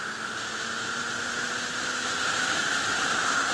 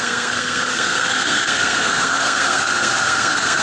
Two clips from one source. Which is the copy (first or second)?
second